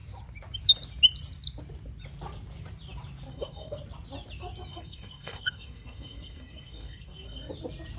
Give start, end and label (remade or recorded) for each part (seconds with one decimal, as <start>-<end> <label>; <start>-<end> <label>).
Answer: 0.0-3.3 recorded; 3.3-3.8 remade; 3.8-4.7 recorded; 4.7-7.5 remade; 7.5-8.0 recorded